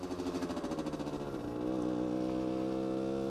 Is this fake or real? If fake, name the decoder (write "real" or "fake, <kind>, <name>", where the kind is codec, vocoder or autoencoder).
real